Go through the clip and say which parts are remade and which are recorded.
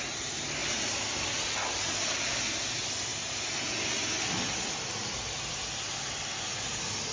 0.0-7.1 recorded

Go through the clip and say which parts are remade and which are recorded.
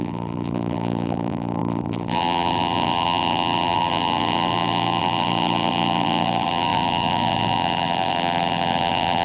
0.0-9.2 remade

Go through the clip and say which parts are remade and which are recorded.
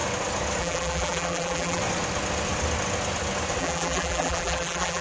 0.0-0.6 recorded; 0.6-1.8 remade; 1.8-3.6 recorded; 3.6-5.0 remade